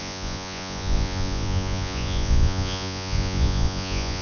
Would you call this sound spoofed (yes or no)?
yes